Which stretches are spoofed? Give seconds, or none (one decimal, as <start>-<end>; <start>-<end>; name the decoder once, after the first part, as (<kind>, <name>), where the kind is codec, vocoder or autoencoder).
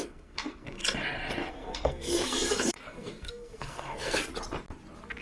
0.0-0.8 (codec, SNAC); 1.5-4.3